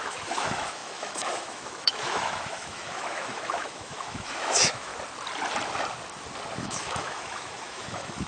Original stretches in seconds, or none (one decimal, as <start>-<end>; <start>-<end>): 4.9-6.6